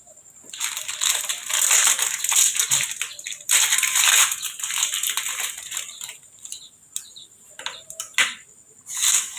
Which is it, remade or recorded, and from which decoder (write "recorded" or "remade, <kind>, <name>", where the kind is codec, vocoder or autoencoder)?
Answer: recorded